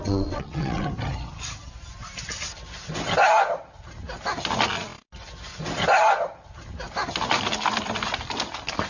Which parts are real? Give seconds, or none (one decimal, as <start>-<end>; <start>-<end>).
0.9-8.9